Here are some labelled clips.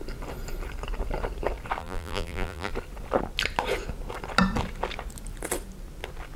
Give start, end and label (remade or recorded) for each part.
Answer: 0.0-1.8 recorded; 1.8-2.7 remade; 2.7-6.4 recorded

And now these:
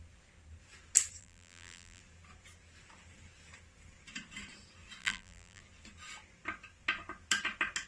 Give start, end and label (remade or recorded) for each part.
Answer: 0.0-1.2 recorded; 1.2-2.0 remade; 2.0-5.0 recorded; 5.0-5.6 remade; 5.6-7.9 recorded